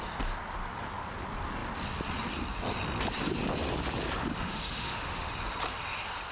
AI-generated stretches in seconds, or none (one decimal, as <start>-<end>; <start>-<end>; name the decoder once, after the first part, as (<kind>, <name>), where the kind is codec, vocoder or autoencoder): 4.3-5.3 (autoencoder, DAC-VAE)